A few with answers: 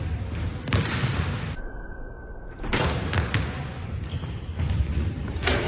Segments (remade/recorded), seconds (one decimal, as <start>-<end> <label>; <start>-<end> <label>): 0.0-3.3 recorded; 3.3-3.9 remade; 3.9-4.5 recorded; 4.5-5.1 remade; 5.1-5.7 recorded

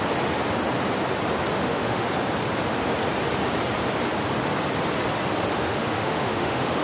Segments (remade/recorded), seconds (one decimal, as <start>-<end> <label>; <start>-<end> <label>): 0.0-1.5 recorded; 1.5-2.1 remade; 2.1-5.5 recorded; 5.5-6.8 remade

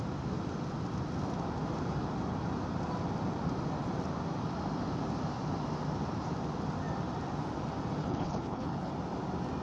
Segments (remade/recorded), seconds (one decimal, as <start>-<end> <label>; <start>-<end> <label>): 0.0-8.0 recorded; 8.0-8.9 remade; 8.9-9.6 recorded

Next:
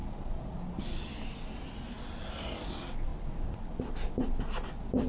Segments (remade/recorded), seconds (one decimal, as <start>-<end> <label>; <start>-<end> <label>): 0.0-5.1 recorded

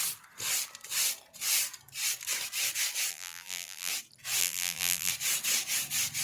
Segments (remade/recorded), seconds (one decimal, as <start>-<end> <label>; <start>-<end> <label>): 0.0-3.1 recorded; 3.1-3.9 remade; 3.9-4.4 recorded; 4.4-5.1 remade; 5.1-6.2 recorded